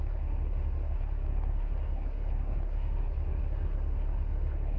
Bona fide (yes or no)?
no